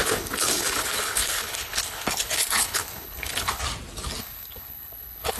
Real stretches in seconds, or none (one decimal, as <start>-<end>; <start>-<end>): 3.6-4.2

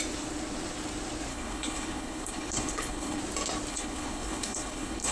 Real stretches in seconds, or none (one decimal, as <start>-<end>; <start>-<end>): 0.0-1.3; 3.2-3.7

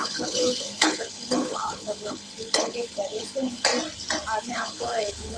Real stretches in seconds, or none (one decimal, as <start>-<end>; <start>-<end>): 3.7-4.4

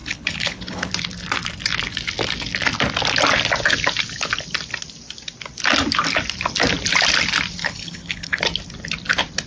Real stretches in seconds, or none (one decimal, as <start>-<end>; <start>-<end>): 0.9-7.6; 8.4-9.5

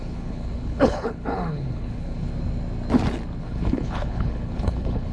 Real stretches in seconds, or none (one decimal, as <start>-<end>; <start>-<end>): 2.3-3.4